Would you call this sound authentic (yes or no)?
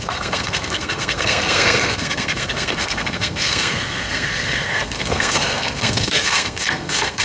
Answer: no